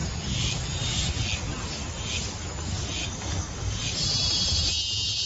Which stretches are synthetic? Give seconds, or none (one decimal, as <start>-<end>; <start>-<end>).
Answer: 3.0-3.8